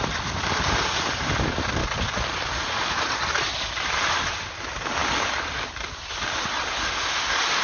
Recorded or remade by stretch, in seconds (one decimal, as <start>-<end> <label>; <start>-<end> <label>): 0.0-7.6 recorded

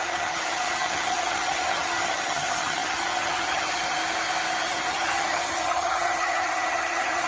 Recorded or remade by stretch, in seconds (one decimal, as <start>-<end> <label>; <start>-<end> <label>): 0.0-4.0 remade; 4.0-4.6 recorded; 4.6-7.3 remade

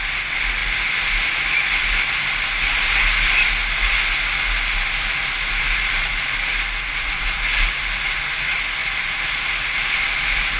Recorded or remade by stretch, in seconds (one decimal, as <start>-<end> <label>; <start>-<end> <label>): 0.0-10.6 recorded

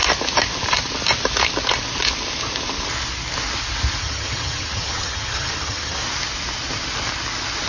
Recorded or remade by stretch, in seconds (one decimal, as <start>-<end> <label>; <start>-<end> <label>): 0.0-4.0 recorded; 4.0-6.0 remade; 6.0-7.7 recorded